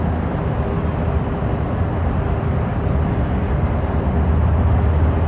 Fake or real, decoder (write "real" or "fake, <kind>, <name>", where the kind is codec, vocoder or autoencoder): real